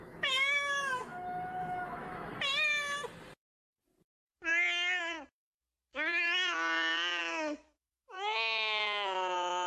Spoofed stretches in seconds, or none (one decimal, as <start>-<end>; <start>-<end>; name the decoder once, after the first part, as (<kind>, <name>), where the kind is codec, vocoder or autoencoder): 0.0-2.3 (autoencoder, DAC-VAE); 7.2-9.7